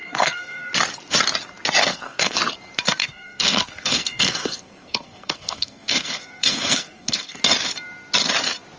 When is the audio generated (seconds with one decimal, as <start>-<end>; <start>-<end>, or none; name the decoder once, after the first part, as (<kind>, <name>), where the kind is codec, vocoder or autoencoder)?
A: 0.0-0.7 (codec, SNAC); 1.8-2.4; 3.0-7.4